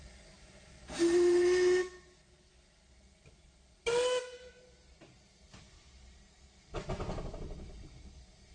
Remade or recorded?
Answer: recorded